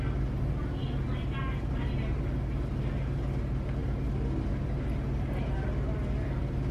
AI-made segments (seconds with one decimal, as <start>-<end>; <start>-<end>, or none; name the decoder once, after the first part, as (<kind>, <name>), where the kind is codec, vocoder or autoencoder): none